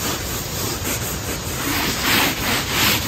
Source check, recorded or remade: recorded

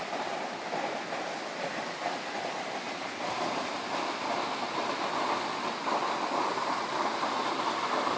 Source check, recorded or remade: recorded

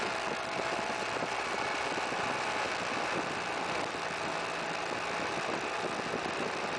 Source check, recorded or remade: recorded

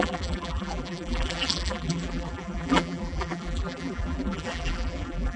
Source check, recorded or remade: remade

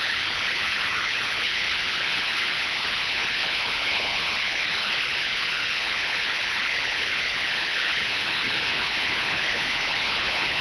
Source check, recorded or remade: remade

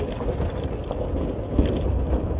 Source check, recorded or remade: recorded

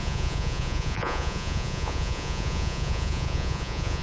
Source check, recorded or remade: remade